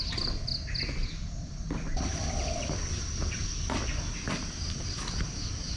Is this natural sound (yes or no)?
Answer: yes